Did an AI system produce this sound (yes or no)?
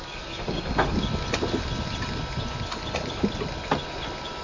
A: no